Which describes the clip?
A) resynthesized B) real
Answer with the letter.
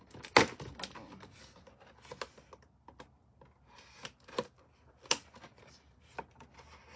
B